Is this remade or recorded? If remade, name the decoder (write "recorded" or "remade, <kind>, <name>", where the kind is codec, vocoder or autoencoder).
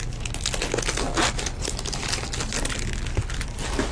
recorded